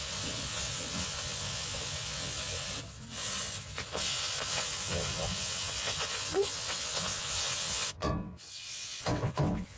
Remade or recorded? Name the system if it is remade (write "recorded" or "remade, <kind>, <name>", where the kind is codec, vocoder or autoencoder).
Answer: remade, vocoder, WaveNeXt